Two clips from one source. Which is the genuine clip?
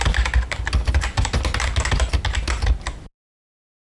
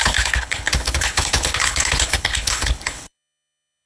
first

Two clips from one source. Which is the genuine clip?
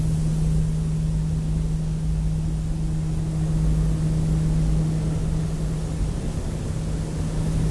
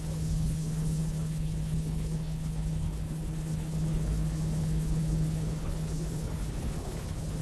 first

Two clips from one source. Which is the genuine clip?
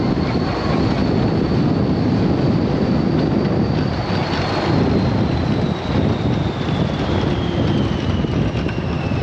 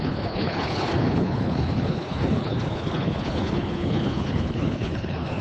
first